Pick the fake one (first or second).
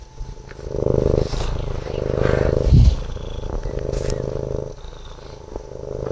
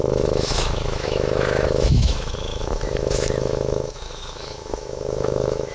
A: second